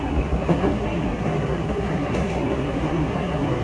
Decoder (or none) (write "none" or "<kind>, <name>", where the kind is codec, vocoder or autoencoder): codec, SNAC